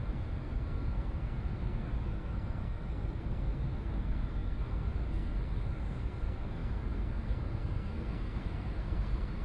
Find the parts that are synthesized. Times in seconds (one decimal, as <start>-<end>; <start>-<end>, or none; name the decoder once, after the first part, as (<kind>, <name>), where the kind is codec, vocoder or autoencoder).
0.0-9.4 (codec, SNAC)